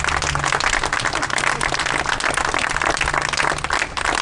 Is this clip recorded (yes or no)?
yes